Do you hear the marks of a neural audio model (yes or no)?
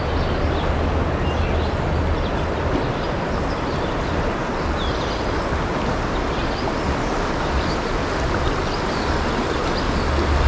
no